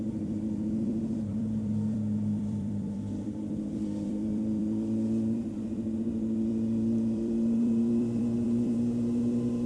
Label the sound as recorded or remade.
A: remade